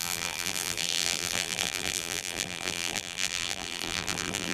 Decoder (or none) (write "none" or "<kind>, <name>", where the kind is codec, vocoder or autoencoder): vocoder, BigVGAN v2